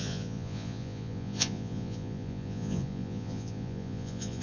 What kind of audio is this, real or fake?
fake